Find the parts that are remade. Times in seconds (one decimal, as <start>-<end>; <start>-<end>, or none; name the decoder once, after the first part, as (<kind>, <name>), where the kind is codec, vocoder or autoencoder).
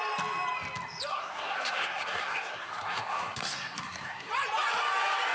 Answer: 1.1-4.3 (codec, SNAC)